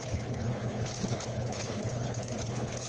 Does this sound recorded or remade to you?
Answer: remade